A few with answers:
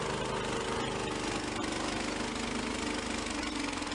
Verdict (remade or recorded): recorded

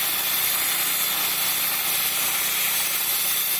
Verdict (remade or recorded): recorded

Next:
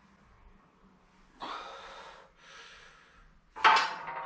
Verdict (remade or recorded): recorded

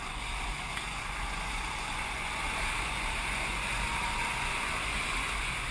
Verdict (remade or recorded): remade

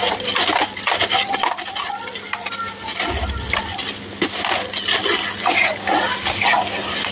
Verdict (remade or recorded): recorded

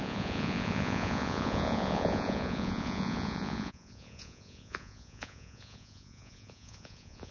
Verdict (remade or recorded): remade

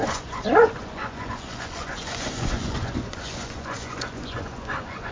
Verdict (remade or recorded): remade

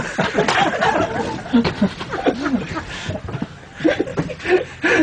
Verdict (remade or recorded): recorded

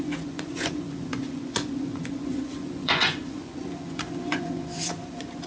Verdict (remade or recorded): remade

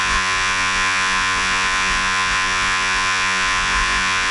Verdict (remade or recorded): remade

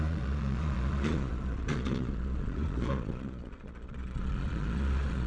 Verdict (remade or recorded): remade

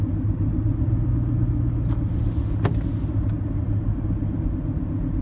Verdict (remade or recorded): recorded